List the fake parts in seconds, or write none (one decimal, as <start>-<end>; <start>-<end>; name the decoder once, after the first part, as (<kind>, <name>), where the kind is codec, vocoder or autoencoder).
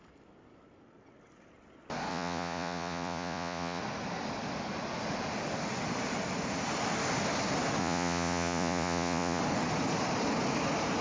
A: 2.1-3.8 (vocoder, Vocos); 7.8-9.4